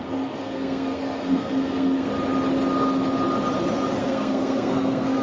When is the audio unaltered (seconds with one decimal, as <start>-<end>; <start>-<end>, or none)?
2.1-4.0